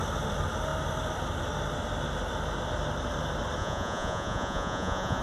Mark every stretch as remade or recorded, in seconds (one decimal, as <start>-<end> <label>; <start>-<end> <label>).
0.0-3.6 recorded; 3.6-5.2 remade